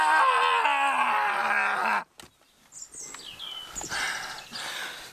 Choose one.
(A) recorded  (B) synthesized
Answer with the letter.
A